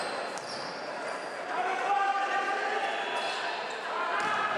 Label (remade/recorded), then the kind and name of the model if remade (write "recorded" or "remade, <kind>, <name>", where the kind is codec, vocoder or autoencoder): recorded